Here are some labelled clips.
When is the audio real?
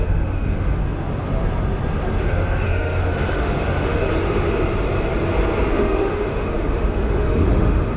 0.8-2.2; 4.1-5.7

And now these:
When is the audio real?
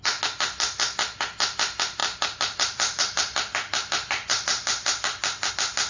0.0-5.9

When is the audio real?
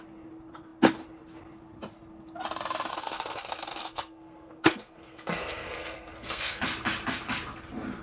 0.0-2.9; 6.6-8.0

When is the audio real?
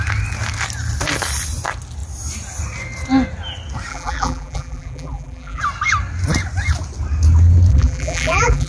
0.0-3.9; 5.6-7.7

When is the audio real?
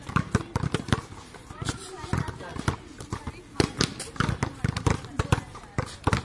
0.0-6.2